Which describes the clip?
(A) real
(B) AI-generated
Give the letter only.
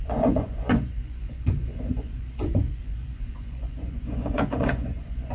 B